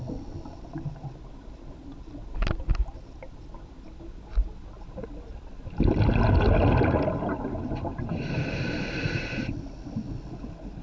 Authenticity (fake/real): real